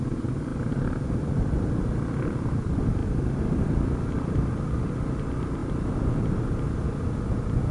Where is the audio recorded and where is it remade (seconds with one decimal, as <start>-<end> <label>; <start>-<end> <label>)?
0.0-7.7 recorded